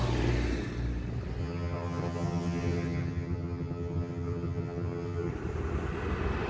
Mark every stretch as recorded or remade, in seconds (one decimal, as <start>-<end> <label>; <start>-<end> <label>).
0.0-1.4 recorded; 1.4-5.3 remade; 5.3-6.5 recorded